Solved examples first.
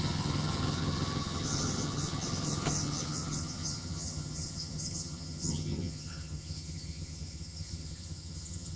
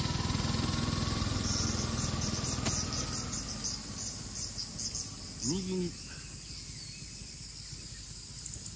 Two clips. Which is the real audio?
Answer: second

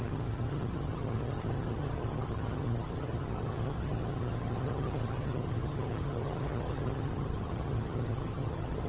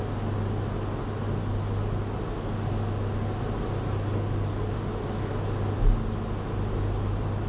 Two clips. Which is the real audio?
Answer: second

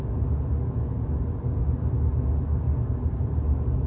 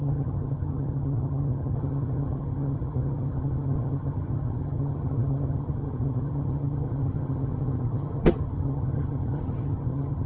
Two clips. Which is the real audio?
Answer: first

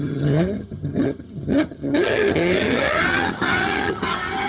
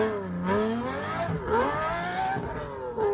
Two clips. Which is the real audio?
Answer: second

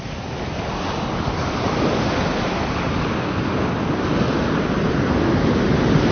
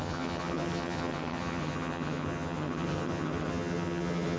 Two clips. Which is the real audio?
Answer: first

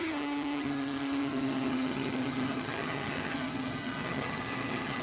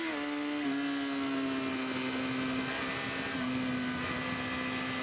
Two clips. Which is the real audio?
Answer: second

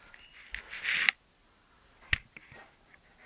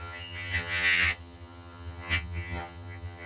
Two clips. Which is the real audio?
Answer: first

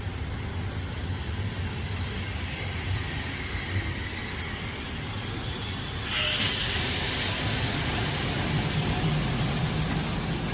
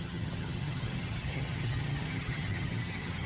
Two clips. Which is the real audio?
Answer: first